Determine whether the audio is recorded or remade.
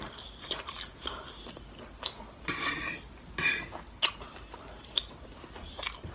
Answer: recorded